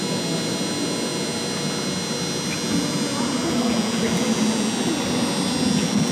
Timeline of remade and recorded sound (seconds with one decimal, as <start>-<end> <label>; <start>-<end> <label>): 0.0-6.1 recorded

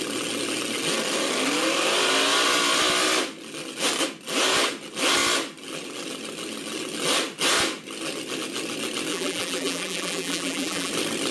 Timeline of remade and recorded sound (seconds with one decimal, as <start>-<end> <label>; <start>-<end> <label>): 0.0-9.1 recorded; 9.1-10.9 remade; 10.9-11.3 recorded

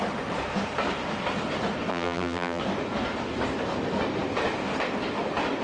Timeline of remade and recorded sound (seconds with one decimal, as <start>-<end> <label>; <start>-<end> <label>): 0.0-1.9 recorded; 1.9-2.6 remade; 2.6-5.6 recorded

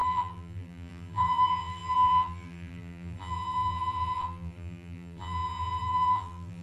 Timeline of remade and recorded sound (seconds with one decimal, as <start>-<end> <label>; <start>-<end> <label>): 0.0-6.6 remade

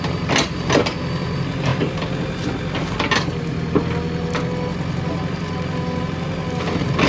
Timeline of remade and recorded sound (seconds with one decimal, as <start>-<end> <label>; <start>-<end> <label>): 0.0-7.1 recorded